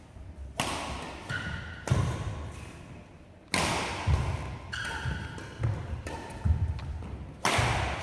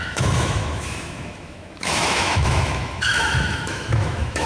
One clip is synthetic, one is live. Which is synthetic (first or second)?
second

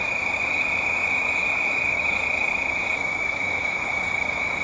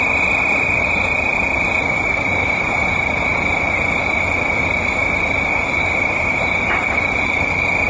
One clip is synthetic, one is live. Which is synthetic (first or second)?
first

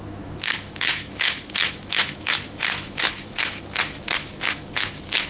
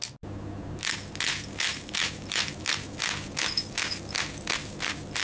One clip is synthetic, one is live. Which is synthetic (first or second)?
first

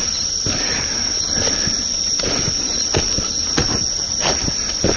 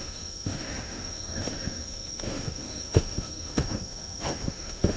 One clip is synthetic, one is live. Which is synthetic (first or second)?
second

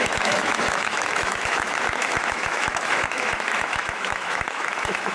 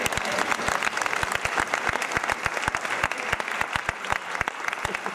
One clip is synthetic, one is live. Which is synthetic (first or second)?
first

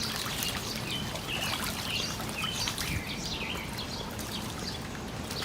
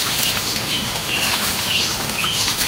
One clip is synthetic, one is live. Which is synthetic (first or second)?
second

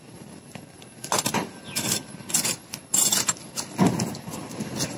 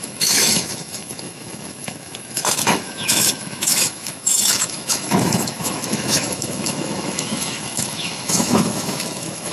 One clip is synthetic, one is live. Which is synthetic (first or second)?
second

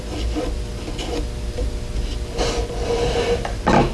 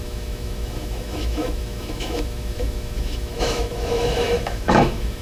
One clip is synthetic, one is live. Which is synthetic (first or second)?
second